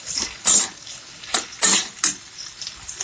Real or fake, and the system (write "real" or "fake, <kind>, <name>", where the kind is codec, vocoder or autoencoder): real